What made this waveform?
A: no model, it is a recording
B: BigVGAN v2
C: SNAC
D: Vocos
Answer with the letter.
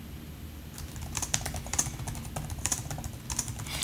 A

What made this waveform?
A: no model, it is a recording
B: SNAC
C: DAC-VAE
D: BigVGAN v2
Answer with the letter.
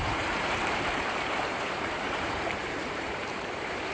D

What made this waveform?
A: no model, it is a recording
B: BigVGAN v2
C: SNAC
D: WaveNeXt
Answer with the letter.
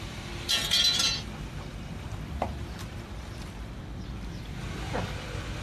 B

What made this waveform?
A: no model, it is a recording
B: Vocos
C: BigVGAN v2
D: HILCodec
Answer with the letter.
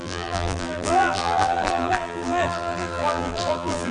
C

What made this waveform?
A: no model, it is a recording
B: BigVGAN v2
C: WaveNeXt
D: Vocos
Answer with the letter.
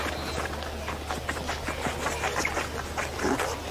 A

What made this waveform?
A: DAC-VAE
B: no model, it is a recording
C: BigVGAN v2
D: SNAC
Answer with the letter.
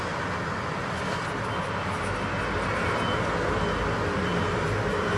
B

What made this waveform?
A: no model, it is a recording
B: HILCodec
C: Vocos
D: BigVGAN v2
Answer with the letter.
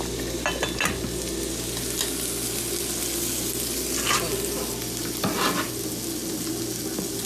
A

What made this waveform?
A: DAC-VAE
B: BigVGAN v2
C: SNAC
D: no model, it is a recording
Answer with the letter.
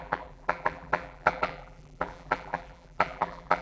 B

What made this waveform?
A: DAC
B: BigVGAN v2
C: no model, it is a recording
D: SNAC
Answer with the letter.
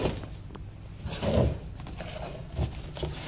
C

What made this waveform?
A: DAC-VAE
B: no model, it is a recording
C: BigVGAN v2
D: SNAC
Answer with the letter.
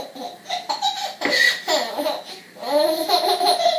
B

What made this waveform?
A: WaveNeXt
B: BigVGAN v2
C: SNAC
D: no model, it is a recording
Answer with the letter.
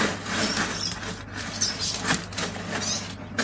D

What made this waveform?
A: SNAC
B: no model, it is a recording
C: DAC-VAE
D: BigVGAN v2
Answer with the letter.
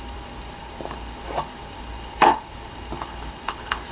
D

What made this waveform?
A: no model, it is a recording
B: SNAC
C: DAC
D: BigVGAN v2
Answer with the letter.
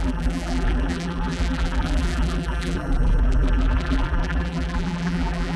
D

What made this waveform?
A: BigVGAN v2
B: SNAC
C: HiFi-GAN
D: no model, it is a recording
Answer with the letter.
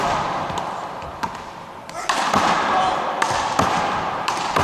A